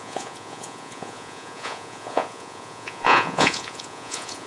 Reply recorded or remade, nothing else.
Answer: remade